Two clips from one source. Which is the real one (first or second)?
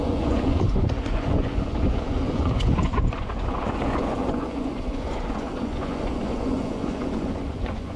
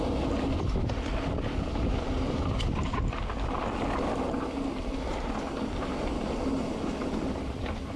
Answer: second